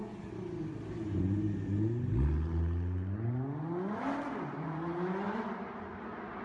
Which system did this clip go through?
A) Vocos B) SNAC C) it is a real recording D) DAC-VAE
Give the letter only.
C